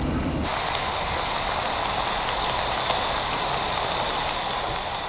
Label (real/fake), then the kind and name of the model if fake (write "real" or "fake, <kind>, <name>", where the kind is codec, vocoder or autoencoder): real